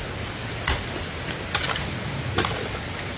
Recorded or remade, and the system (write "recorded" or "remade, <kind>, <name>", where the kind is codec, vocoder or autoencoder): recorded